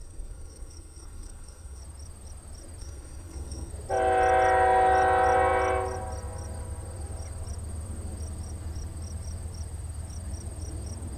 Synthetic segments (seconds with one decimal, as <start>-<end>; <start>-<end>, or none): 0.0-1.8; 2.8-3.7

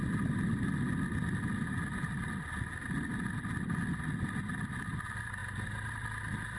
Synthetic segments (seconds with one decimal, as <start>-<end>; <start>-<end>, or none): none

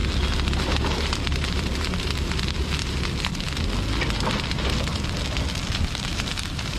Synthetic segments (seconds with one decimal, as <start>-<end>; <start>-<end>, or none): 0.6-3.3; 4.5-4.9; 5.7-6.8

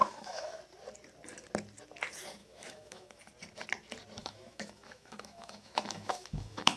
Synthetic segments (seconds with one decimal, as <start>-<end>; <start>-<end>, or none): 0.0-0.6; 2.4-3.2; 4.2-6.8

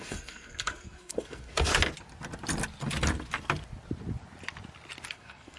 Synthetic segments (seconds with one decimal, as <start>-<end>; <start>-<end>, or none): 0.0-1.7; 5.1-5.6

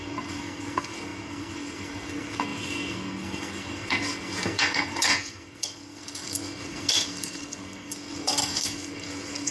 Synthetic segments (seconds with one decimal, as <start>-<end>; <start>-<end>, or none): 0.0-9.5